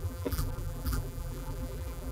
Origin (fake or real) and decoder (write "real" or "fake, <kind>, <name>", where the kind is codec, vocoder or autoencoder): fake, vocoder, BigVGAN v2